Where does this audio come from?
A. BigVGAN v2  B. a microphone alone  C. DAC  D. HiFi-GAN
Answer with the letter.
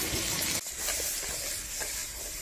B